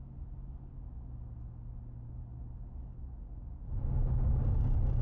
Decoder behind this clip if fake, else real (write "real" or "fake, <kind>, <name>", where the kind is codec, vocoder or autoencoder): real